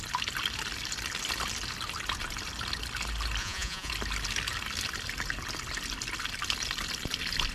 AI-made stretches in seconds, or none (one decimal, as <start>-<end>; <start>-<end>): 3.4-3.9